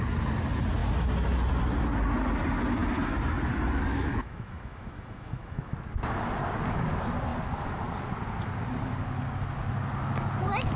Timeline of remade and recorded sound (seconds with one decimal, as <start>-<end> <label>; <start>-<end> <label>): 0.0-3.9 recorded; 3.9-5.7 remade; 5.7-10.8 recorded